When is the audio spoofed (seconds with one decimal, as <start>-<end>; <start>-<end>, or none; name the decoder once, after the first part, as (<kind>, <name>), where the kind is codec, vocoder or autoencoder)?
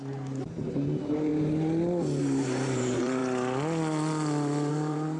0.0-1.3 (vocoder, BigVGAN v2); 2.2-3.2; 4.7-5.2